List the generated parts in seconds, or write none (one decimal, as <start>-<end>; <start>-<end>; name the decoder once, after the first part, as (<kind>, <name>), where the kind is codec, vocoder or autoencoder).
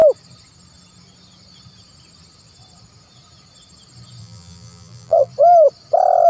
4.2-5.3 (vocoder, BigVGAN v2)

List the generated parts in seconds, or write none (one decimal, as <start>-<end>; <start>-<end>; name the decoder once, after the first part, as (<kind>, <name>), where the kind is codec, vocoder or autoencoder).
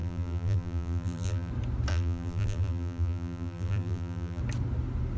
0.0-1.5 (vocoder, BigVGAN v2); 1.9-4.4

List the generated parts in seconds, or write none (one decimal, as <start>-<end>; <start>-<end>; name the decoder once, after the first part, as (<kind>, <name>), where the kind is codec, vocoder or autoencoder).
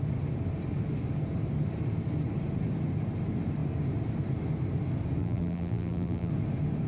5.2-6.3 (vocoder, BigVGAN v2)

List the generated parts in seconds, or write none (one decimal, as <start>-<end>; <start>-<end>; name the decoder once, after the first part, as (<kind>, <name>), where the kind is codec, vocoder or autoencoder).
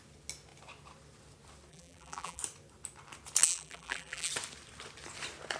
1.7-2.4 (vocoder, BigVGAN v2); 3.4-4.3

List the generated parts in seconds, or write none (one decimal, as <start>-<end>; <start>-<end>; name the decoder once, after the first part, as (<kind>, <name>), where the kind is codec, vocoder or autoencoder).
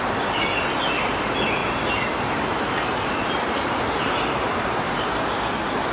1.6-5.1 (vocoder, BigVGAN v2)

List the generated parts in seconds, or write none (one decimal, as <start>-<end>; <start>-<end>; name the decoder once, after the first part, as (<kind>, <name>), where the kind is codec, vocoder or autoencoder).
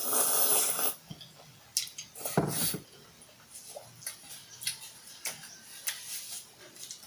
none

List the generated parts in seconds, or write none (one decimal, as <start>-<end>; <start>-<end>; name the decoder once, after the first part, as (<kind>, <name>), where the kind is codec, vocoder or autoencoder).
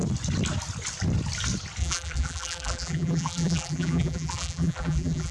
1.8-5.3 (vocoder, BigVGAN v2)